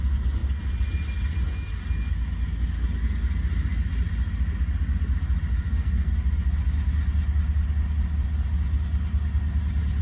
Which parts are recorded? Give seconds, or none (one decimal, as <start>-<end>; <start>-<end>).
0.0-5.5; 6.1-10.0